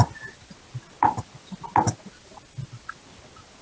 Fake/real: real